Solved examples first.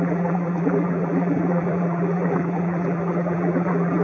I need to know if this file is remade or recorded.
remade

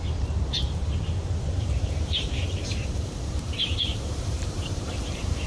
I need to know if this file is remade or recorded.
remade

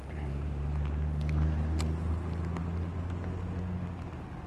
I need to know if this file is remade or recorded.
recorded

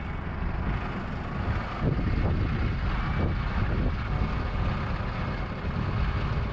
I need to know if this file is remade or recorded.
recorded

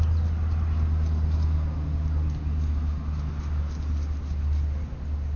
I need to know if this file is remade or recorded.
recorded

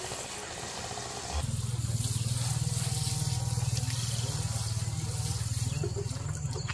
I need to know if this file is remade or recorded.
recorded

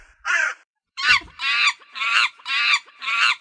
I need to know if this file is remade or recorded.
remade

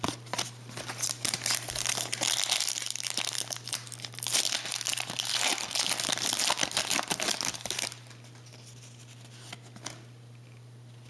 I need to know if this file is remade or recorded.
remade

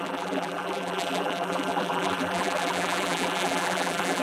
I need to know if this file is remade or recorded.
remade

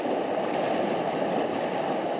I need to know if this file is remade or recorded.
remade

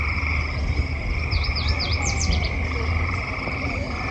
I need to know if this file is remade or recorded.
remade